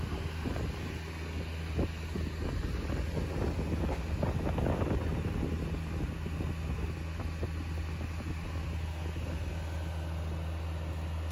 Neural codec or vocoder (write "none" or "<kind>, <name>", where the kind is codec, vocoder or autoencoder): none